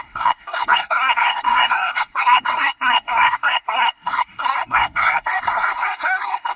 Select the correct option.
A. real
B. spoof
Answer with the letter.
B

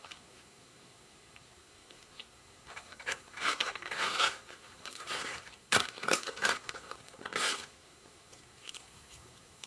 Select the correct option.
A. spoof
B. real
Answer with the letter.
A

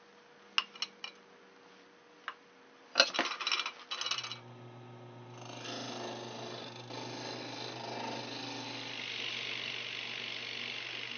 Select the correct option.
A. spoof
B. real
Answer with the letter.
B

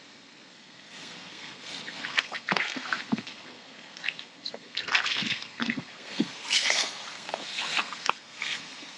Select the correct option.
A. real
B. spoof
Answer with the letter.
B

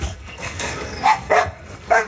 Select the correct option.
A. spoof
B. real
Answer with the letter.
A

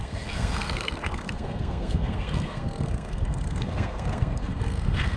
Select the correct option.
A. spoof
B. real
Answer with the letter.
A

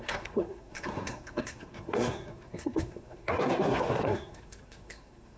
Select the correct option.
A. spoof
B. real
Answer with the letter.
A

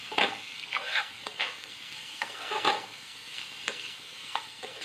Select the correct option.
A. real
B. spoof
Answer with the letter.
B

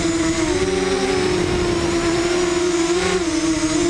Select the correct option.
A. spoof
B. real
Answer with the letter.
B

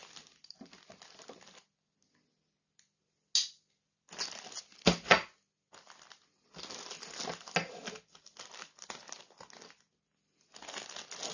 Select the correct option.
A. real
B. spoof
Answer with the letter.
A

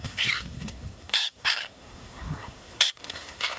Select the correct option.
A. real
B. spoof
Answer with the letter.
B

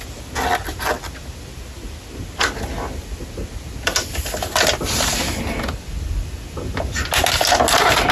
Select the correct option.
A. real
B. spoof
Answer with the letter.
A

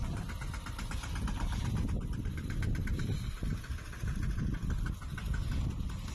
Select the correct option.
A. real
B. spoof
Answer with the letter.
A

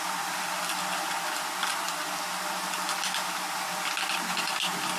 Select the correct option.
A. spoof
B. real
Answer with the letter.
B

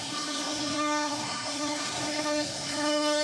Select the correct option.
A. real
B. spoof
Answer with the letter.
B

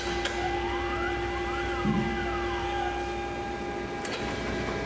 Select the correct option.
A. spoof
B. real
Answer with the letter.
B